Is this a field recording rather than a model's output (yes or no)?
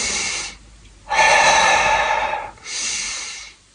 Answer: no